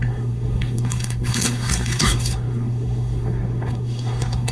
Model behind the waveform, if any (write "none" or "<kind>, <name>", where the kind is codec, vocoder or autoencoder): codec, SNAC